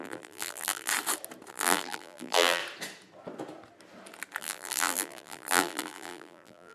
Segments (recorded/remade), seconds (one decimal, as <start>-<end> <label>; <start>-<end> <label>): 0.0-0.9 remade; 0.9-1.5 recorded; 1.5-2.6 remade; 2.6-4.4 recorded; 4.4-6.7 remade